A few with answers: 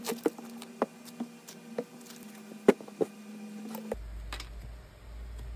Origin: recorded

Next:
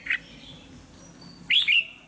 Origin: recorded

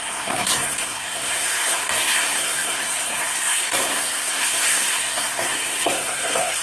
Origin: remade